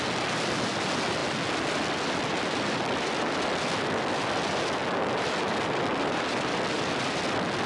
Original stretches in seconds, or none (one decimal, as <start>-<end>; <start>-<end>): 0.0-7.7